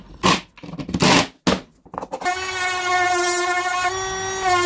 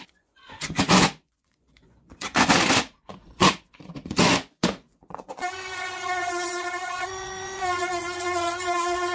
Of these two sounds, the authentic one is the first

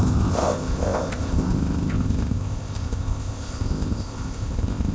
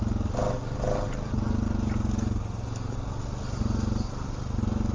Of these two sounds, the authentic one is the second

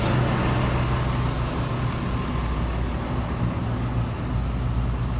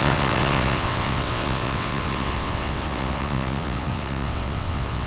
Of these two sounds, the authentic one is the first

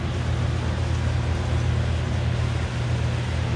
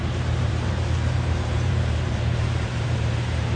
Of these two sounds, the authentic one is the first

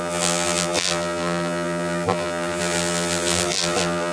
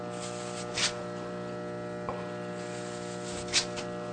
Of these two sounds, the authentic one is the second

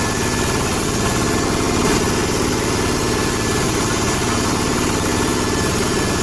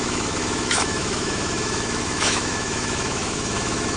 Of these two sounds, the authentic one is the first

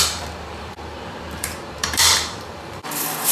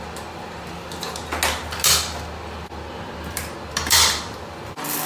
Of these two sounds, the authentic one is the second